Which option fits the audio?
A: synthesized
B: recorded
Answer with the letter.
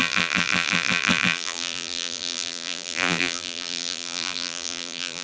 A